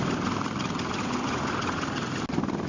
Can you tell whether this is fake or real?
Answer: real